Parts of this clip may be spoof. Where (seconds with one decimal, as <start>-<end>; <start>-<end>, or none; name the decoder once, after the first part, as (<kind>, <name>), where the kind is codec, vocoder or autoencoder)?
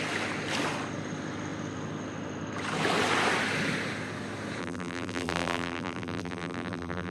4.6-7.1 (vocoder, BigVGAN v2)